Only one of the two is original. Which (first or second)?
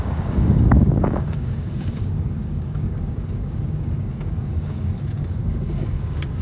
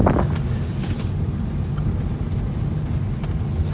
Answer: second